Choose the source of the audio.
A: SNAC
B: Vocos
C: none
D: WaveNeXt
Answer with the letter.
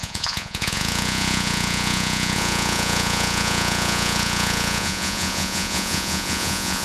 B